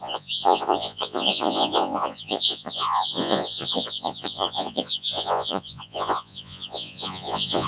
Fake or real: fake